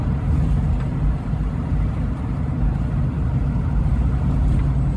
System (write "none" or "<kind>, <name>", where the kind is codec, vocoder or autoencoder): none